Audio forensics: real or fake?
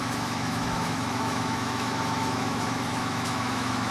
fake